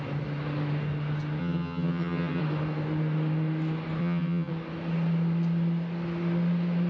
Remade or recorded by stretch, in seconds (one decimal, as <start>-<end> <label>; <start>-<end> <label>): 0.0-1.4 recorded; 1.4-2.4 remade; 2.4-4.0 recorded; 4.0-4.5 remade; 4.5-6.9 recorded